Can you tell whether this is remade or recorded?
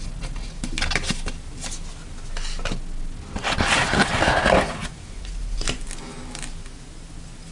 recorded